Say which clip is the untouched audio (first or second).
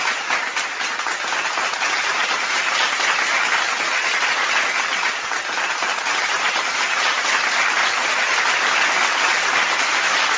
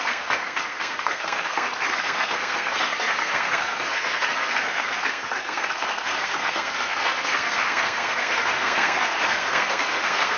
first